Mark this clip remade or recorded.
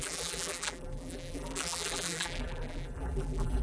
remade